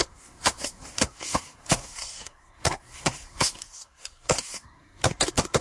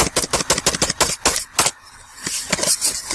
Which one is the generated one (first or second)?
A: first